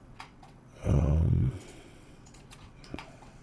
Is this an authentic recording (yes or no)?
no